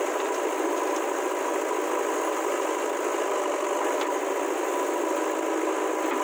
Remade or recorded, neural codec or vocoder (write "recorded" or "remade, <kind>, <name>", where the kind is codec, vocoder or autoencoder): recorded